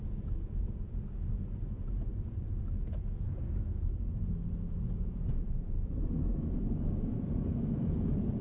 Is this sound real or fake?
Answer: fake